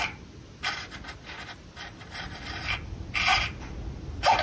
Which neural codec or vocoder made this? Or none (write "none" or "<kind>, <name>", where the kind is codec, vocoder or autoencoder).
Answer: none